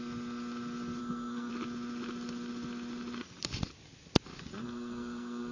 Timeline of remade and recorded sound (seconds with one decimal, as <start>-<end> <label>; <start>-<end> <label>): 0.0-1.0 recorded; 1.0-1.5 remade; 1.5-4.6 recorded; 4.6-5.5 remade